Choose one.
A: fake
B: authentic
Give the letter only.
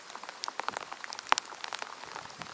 A